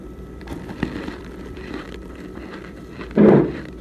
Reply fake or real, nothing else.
fake